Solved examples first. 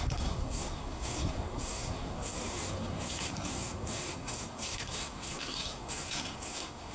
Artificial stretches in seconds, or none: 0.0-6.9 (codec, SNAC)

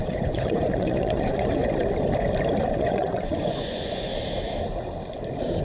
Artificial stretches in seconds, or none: 0.0-1.6 (vocoder, Vocos); 2.7-4.1